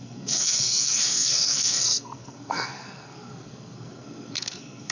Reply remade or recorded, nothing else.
remade